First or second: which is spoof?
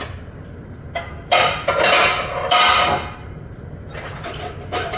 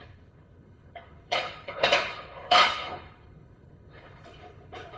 second